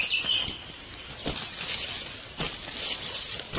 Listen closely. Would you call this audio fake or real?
real